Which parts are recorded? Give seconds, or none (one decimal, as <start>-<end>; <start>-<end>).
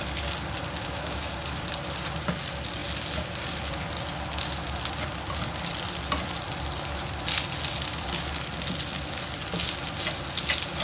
0.0-0.8; 1.3-10.8